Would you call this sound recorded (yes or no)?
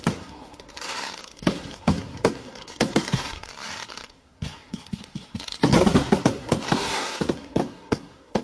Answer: no